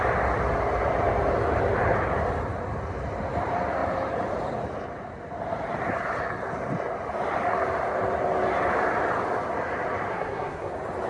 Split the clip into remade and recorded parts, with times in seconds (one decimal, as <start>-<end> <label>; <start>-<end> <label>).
0.0-10.1 recorded; 10.1-10.7 remade; 10.7-11.1 recorded